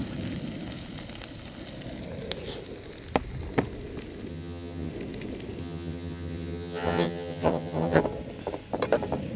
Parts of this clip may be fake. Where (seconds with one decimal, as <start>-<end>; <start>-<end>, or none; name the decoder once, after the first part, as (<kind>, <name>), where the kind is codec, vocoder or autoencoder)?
4.3-4.9 (vocoder, HiFi-GAN); 5.6-8.0